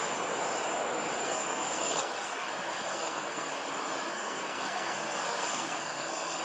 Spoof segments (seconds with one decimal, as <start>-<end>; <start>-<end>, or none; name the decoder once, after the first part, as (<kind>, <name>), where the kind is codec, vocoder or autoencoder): 1.2-2.5 (codec, SNAC); 2.9-3.5; 4.1-6.4